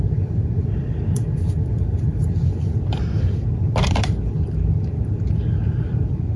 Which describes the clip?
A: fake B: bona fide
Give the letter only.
A